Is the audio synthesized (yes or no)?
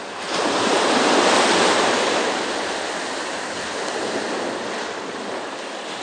no